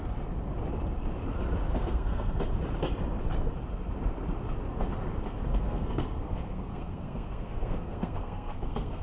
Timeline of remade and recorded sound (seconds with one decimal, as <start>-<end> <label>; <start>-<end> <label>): 0.0-1.7 recorded; 1.7-2.4 remade; 2.4-5.5 recorded; 5.5-9.0 remade